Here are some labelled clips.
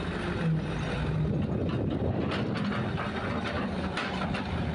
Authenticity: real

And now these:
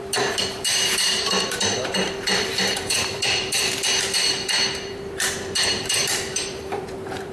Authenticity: fake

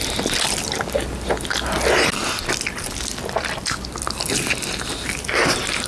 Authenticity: real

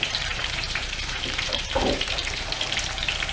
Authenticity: fake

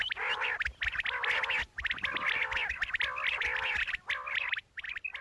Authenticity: real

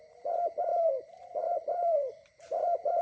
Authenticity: fake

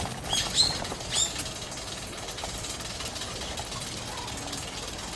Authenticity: real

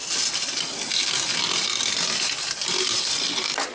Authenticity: real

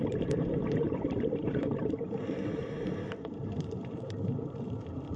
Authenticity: fake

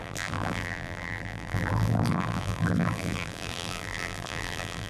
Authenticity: fake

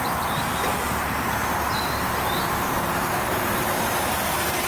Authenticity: fake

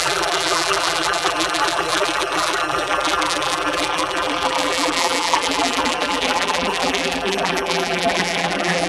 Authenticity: fake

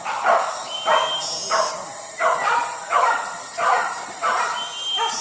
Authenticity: fake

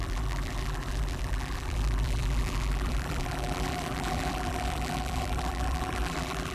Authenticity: fake